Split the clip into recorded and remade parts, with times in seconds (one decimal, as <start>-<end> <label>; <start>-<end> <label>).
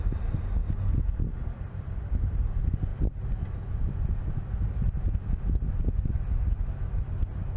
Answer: 0.0-7.6 recorded